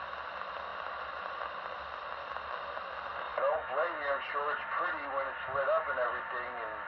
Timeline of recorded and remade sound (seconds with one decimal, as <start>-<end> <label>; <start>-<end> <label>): 0.0-3.3 recorded; 3.3-3.9 remade; 3.9-6.9 recorded